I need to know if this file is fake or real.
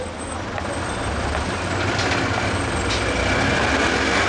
real